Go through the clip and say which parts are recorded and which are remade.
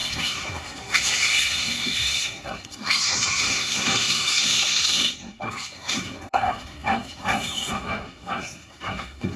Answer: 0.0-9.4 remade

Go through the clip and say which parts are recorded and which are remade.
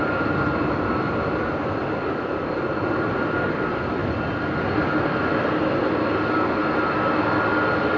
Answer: 0.0-8.0 recorded